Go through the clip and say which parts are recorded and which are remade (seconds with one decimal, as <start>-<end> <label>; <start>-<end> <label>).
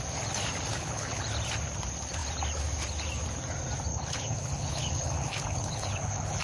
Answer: 0.0-0.7 recorded; 0.7-1.2 remade; 1.2-3.9 recorded; 3.9-6.4 remade